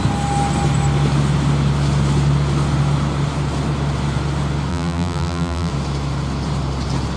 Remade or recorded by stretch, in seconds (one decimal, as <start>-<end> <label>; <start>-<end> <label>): 0.0-4.7 recorded; 4.7-5.7 remade; 5.7-7.2 recorded